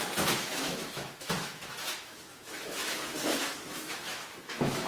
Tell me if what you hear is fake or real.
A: fake